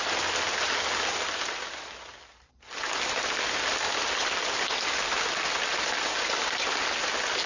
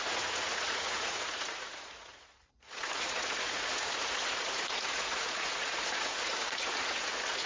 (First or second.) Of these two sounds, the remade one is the second